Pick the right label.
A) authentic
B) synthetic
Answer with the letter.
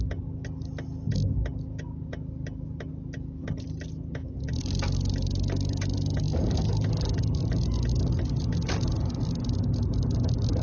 A